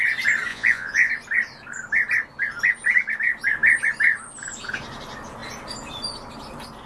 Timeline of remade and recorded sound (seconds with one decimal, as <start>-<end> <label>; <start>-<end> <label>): 0.0-0.5 recorded; 0.5-1.1 remade; 1.1-6.9 recorded